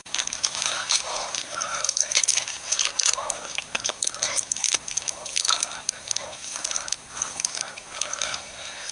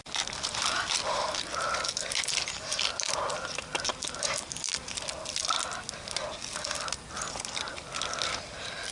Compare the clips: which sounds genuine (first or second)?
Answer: second